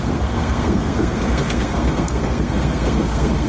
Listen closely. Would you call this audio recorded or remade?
remade